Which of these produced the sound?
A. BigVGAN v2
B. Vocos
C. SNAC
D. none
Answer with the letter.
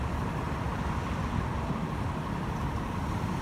D